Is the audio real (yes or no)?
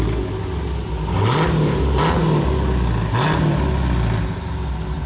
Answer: yes